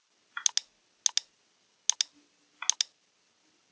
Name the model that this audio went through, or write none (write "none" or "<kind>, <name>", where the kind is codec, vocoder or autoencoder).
none